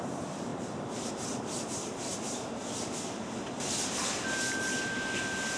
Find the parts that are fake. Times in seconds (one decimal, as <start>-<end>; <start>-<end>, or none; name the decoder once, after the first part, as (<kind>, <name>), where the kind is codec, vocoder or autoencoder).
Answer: none